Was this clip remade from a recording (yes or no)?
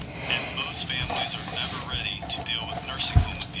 no